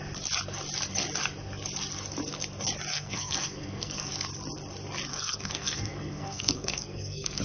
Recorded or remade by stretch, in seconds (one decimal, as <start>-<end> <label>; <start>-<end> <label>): 0.0-2.9 recorded; 2.9-4.1 remade; 4.1-5.1 recorded; 5.1-7.4 remade